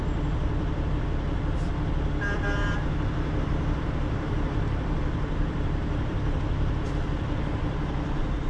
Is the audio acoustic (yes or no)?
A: no